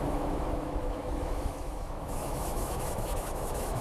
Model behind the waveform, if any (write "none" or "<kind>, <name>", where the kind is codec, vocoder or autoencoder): autoencoder, DAC-VAE